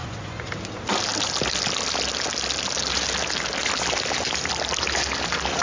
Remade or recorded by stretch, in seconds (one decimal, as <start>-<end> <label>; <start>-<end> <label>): 0.0-0.5 remade; 0.5-5.6 recorded